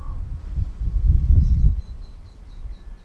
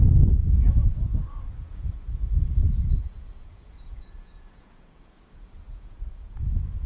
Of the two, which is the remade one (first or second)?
second